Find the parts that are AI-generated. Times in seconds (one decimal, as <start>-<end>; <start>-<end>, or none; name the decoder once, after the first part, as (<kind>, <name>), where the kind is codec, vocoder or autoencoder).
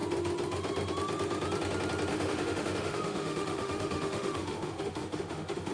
2.1-5.7 (autoencoder, DAC-VAE)